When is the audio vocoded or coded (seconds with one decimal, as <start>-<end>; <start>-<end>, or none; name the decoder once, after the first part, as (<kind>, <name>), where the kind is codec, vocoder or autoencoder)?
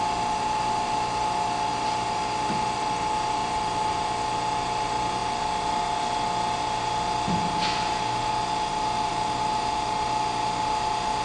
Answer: 3.4-3.9 (vocoder, BigVGAN v2)